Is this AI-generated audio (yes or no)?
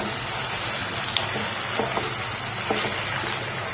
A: no